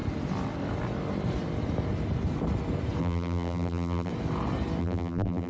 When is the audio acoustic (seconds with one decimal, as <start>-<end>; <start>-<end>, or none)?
0.0-3.0; 4.1-4.8